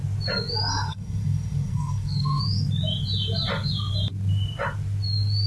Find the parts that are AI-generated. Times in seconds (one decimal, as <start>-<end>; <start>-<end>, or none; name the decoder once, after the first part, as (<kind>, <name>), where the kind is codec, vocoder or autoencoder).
0.9-2.4 (codec, SNAC)

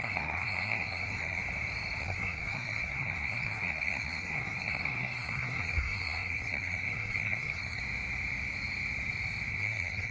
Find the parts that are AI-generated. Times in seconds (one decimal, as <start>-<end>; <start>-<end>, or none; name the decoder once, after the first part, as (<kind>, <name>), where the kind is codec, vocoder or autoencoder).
0.0-1.4 (codec, SNAC); 2.0-7.8; 9.5-10.1

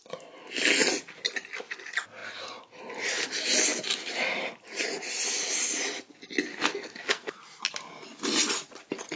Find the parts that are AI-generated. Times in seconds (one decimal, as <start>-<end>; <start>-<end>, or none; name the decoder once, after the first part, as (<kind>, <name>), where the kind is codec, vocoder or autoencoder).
6.5-7.4 (codec, SNAC)